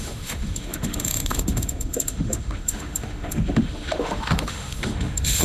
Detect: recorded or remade remade